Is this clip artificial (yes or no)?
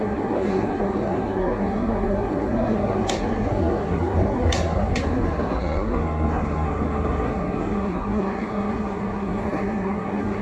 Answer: yes